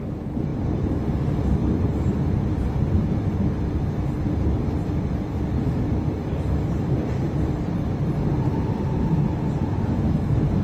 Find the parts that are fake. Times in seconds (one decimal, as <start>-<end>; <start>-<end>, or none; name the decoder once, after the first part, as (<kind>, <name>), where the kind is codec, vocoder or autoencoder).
none